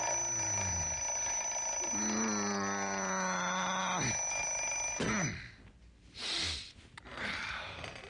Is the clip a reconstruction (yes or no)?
no